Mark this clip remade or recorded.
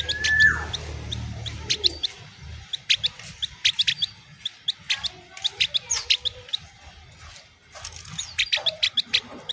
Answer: recorded